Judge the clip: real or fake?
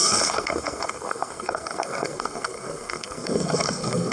fake